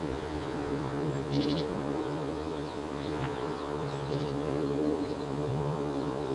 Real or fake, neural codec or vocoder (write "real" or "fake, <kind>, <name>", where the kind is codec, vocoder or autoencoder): fake, vocoder, Vocos